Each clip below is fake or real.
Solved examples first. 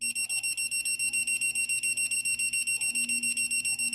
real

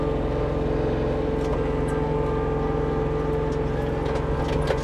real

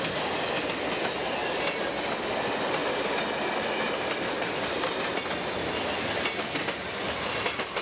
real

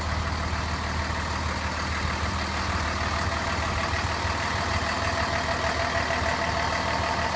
real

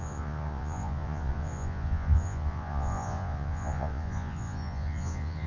fake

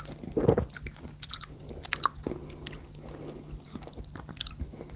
real